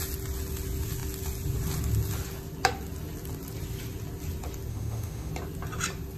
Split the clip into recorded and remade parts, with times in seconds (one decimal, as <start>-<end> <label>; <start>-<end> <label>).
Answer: 0.0-4.7 recorded; 4.7-5.3 remade; 5.3-6.2 recorded